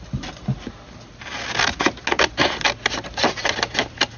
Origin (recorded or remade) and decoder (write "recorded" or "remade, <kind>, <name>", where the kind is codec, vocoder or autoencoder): recorded